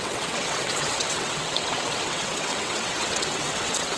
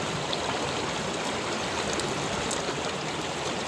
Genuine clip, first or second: second